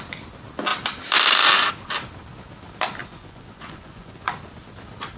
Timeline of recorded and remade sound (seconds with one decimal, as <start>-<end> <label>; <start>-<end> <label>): 0.0-3.0 recorded; 3.0-4.3 remade; 4.3-5.2 recorded